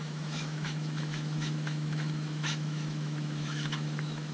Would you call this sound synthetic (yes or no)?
yes